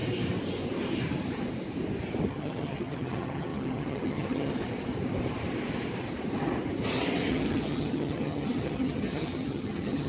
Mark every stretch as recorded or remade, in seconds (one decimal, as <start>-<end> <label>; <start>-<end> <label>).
0.0-2.3 recorded; 2.3-4.5 remade; 4.5-7.3 recorded; 7.3-10.1 remade